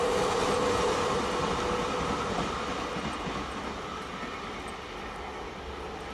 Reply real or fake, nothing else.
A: real